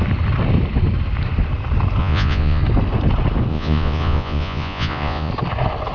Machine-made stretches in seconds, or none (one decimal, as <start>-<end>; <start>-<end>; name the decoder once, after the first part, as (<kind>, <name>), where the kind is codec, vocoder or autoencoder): 2.0-2.6 (vocoder, Vocos); 3.5-5.3